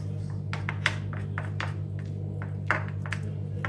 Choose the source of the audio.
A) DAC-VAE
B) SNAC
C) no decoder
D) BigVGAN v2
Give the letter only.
C